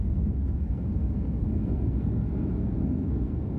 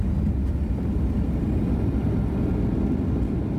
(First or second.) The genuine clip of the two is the second